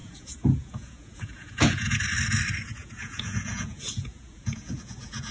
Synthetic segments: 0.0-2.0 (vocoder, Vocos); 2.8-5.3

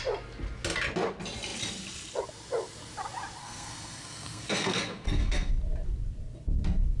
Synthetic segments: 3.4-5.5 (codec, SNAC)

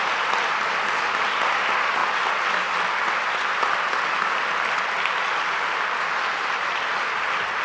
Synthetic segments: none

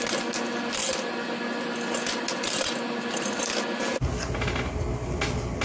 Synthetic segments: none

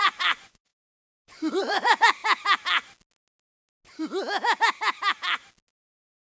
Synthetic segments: 0.0-2.2 (vocoder, Vocos); 5.7-6.3

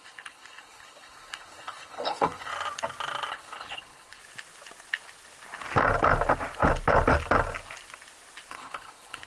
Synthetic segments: 0.0-2.5 (codec, HILCodec); 3.3-4.2; 8.5-9.3

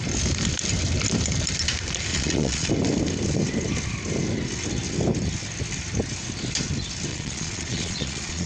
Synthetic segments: 2.1-2.7 (vocoder, Vocos); 7.1-8.5

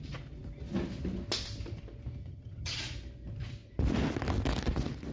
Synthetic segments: 2.2-2.8 (vocoder, HiFi-GAN)